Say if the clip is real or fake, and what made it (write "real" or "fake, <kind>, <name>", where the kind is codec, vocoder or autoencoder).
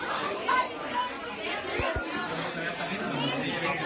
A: real